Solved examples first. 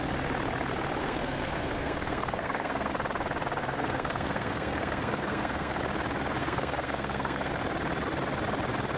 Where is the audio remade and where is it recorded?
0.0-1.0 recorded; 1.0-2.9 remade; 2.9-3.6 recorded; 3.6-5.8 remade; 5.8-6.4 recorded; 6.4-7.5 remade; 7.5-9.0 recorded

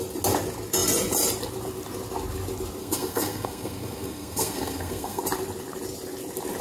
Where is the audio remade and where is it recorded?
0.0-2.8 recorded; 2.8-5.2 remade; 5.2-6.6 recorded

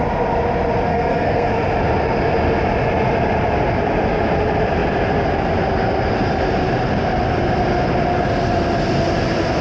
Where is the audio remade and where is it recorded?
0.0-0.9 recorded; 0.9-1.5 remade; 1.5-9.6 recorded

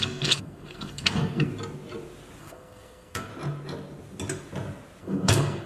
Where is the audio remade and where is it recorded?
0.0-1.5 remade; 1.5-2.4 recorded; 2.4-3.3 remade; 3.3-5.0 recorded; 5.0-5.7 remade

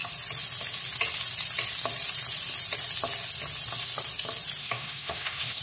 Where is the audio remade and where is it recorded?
0.0-4.6 recorded; 4.6-5.6 remade